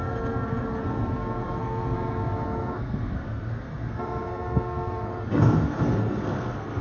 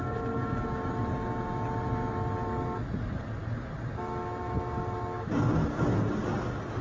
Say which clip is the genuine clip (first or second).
second